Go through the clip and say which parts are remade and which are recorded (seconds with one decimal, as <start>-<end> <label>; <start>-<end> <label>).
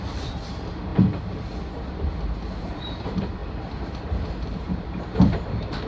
0.0-0.9 remade; 0.9-2.6 recorded; 2.6-3.4 remade; 3.4-4.0 recorded; 4.0-5.9 remade